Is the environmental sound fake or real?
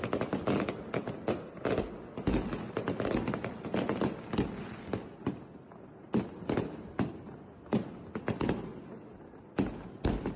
real